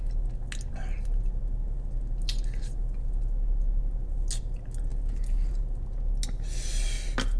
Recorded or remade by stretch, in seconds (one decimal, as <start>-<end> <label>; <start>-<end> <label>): 0.0-7.4 recorded